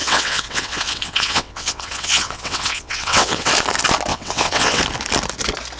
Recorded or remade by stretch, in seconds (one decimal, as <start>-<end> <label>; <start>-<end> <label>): 0.0-3.5 remade; 3.5-4.1 recorded; 4.1-4.8 remade; 4.8-5.8 recorded